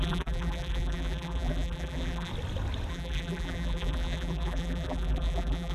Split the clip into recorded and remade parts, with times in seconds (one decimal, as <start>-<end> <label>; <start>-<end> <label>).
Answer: 0.0-2.3 remade; 2.3-2.9 recorded; 2.9-5.7 remade